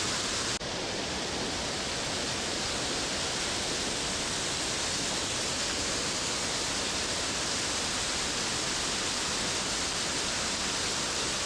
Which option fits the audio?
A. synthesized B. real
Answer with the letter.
B